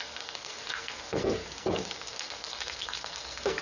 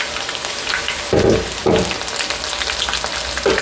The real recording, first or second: second